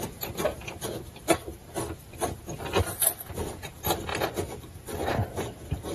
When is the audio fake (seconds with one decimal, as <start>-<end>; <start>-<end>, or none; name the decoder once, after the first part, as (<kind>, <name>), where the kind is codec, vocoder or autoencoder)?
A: 0.0-4.1 (vocoder, BigVGAN v2); 4.6-5.9